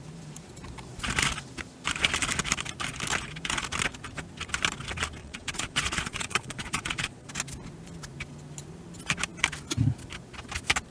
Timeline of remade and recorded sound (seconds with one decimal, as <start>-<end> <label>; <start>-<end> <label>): 0.0-5.2 recorded; 5.2-7.3 remade; 7.3-10.9 recorded